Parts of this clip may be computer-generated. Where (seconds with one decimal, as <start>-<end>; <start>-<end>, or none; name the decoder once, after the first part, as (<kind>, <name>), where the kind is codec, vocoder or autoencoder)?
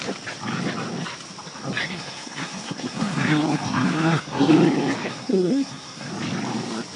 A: 1.8-4.5 (codec, SNAC); 5.0-6.1